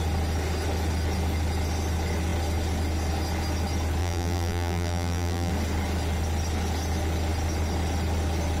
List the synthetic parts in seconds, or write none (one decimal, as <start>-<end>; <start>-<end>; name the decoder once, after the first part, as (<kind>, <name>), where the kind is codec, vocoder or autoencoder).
4.0-5.5 (vocoder, BigVGAN v2)